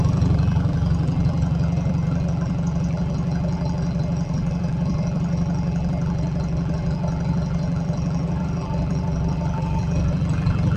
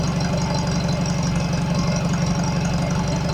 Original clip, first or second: second